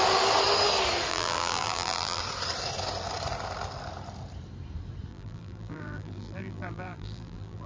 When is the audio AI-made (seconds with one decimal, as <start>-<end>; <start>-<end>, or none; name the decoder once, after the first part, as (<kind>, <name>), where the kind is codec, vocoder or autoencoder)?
1.1-2.2 (vocoder, BigVGAN v2); 5.1-7.7

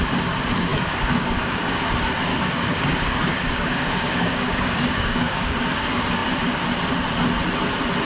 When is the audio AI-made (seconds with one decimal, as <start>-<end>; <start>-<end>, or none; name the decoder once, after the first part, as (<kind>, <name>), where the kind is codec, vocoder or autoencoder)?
0.7-1.8 (codec, DAC); 2.3-5.8

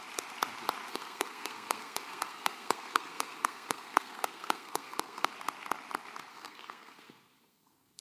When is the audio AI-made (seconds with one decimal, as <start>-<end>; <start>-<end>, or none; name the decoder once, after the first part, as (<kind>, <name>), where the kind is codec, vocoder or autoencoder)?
0.9-5.3 (codec, SNAC); 6.3-8.0

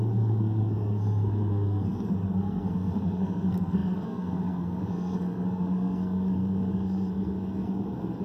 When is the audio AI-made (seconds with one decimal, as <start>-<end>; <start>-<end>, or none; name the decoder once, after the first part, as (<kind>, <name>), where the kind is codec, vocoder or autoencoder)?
0.0-8.2 (codec, SNAC)

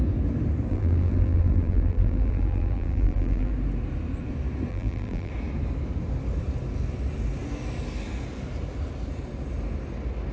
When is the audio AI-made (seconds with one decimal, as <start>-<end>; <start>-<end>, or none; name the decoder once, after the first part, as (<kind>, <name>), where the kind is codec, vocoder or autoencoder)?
0.7-3.5 (vocoder, BigVGAN v2); 4.7-5.3

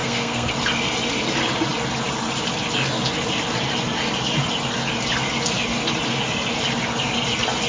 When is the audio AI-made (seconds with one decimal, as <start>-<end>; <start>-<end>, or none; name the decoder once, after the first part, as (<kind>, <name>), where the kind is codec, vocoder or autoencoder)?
0.0-0.5 (codec, SNAC)

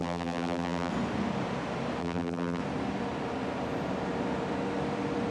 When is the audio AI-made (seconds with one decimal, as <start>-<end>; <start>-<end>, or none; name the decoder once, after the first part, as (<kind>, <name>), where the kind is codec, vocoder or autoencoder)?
0.0-0.9 (vocoder, BigVGAN v2); 2.0-2.6